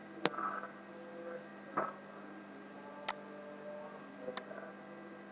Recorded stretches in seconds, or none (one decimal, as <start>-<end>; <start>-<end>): 0.0-5.3